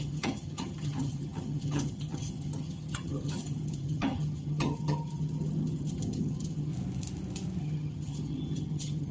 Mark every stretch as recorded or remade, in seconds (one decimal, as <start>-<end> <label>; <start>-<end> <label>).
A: 0.0-6.7 remade; 6.7-7.6 recorded; 7.6-9.1 remade